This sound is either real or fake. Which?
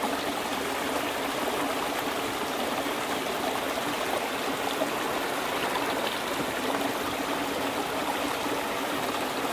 real